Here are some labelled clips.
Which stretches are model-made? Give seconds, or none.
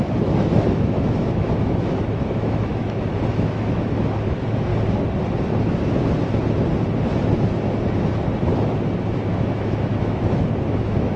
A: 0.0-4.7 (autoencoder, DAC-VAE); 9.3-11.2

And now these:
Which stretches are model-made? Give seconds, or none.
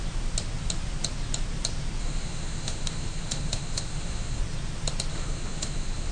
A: 2.0-4.4 (autoencoder, DAC-VAE); 5.1-6.1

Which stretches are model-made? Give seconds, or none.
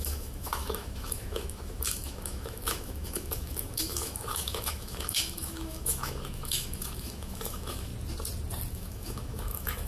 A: 0.0-7.9 (autoencoder, DAC-VAE); 8.7-9.9